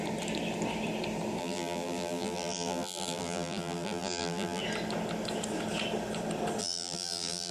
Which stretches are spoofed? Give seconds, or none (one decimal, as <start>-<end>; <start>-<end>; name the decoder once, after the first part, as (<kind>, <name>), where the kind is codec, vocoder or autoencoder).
1.4-4.6 (vocoder, BigVGAN v2); 6.6-7.5

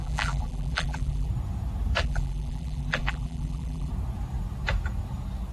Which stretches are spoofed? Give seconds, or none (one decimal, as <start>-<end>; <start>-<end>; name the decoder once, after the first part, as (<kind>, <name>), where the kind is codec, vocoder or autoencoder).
0.0-1.3 (vocoder, BigVGAN v2); 2.0-3.9

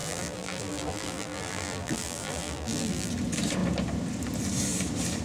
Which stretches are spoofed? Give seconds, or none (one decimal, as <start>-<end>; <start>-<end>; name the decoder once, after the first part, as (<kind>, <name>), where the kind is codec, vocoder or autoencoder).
0.0-3.1 (vocoder, BigVGAN v2)

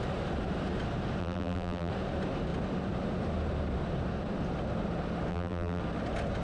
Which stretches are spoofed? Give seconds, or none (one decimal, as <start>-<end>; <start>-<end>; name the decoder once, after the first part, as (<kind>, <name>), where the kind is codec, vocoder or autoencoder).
1.2-1.9 (vocoder, BigVGAN v2); 5.3-5.8

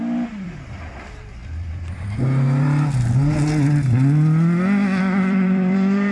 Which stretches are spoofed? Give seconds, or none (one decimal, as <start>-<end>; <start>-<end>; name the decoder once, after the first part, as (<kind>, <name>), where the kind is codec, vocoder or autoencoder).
0.0-1.4 (vocoder, BigVGAN v2); 5.0-6.1